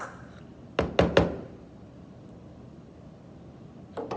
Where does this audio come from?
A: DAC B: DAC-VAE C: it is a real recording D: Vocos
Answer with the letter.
C